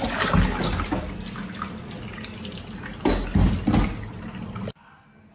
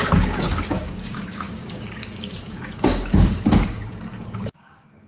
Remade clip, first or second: second